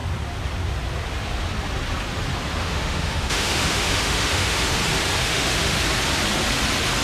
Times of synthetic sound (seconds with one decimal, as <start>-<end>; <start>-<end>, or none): 2.6-4.8; 5.2-5.8